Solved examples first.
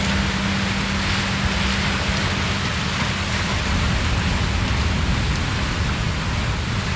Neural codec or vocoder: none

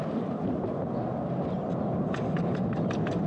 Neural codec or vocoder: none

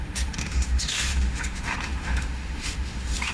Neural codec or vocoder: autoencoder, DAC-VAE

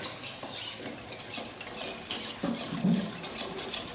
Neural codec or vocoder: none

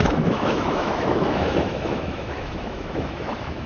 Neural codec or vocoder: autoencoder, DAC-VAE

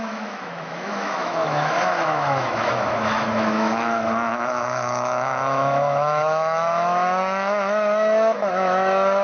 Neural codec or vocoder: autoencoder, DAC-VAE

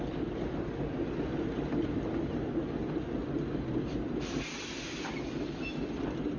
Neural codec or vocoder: none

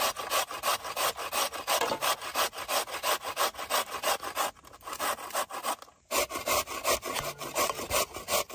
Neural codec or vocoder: none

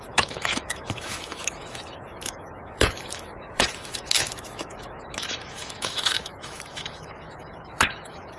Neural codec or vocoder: autoencoder, DAC-VAE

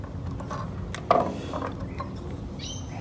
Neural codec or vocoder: none